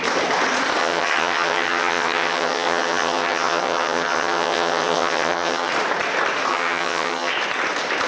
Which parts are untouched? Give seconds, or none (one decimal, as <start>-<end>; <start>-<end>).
0.0-0.8; 5.7-6.5; 7.3-8.1